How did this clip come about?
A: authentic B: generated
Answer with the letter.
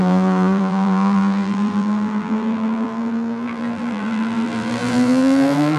B